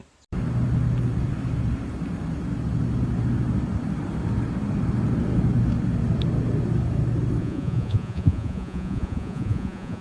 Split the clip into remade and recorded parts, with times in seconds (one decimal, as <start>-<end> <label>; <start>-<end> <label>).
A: 0.0-7.4 recorded; 7.4-10.0 remade